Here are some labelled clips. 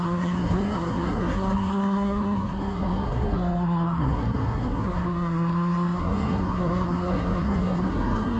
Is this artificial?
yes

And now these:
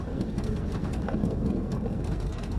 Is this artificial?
yes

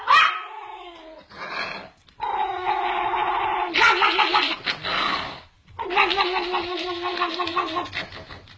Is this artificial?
no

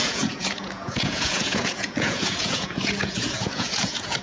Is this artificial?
yes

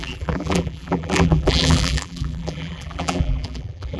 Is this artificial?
yes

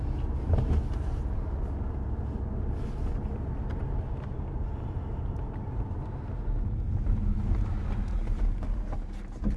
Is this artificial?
no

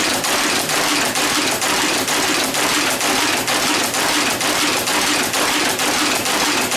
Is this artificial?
no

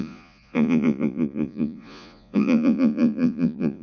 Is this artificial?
yes